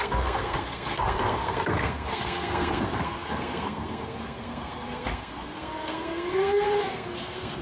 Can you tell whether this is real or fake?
fake